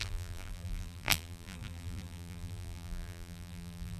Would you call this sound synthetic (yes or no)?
yes